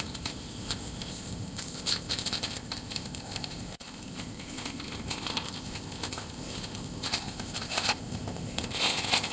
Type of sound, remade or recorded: remade